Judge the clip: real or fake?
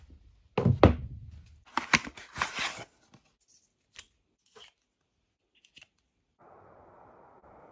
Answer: real